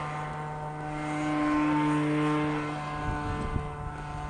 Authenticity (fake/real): real